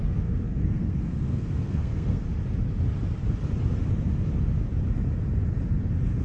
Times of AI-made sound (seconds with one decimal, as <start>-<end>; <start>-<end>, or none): 0.0-2.2